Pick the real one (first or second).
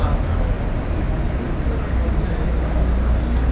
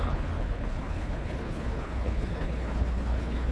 first